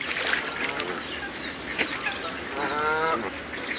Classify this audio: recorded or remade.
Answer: recorded